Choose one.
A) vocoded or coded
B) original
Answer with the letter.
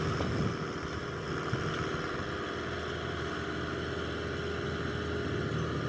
B